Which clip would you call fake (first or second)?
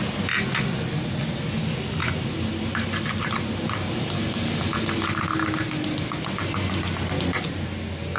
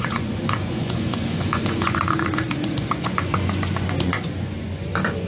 second